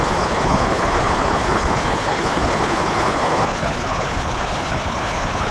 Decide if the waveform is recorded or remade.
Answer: remade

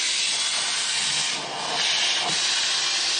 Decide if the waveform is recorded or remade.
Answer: recorded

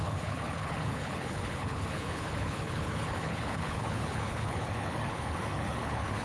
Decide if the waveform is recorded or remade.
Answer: remade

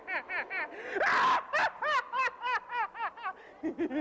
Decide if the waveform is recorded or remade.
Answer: recorded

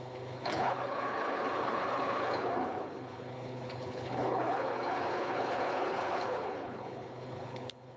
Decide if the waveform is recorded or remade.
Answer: remade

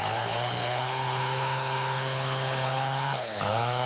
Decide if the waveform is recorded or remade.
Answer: remade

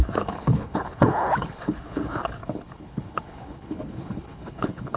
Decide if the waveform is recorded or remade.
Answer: remade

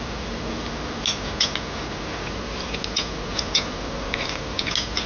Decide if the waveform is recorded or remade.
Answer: recorded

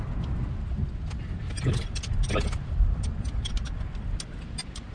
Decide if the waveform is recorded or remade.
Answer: recorded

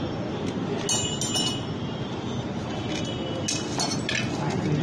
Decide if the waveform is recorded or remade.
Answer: recorded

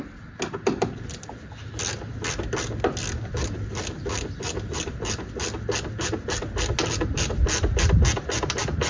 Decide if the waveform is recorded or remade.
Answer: recorded